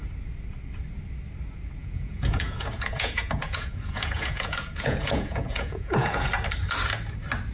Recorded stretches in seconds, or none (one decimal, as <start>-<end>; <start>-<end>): 0.0-1.8; 6.3-7.5